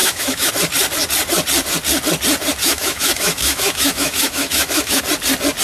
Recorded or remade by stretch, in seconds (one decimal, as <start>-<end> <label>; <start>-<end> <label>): 0.0-0.5 remade; 0.5-2.6 recorded; 2.6-5.0 remade; 5.0-5.6 recorded